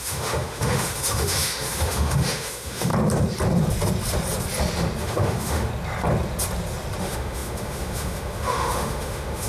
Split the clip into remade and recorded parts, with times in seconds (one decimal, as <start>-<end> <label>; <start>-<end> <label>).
0.0-2.9 remade; 2.9-5.0 recorded; 5.0-5.7 remade; 5.7-7.0 recorded; 7.0-9.5 remade